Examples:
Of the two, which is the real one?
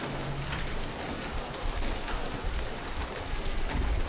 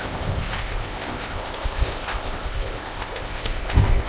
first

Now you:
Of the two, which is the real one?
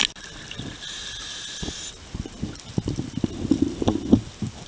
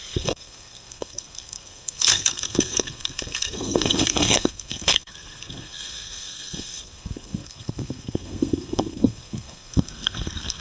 first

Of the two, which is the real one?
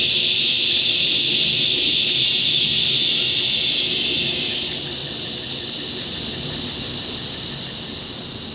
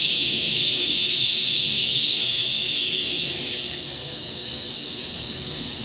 first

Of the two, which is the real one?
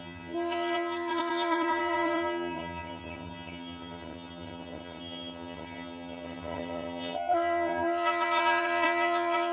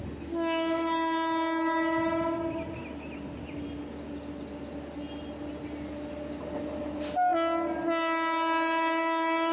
second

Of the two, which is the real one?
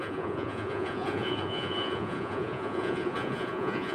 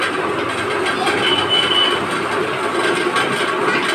second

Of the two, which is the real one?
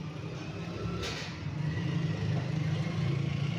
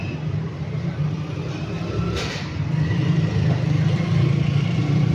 first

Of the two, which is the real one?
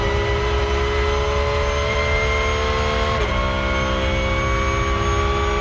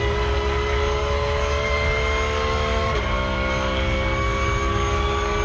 first